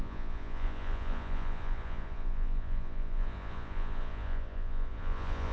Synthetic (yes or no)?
yes